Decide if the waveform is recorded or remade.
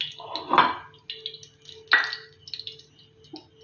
recorded